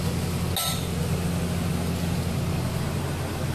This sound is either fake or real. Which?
real